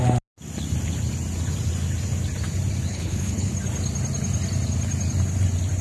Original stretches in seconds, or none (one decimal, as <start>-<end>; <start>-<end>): 0.0-2.9; 3.5-5.8